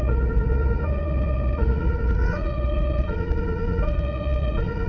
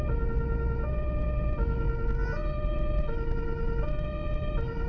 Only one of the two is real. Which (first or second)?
second